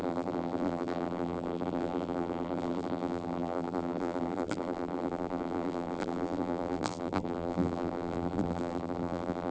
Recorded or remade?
remade